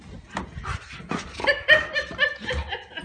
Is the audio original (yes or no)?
yes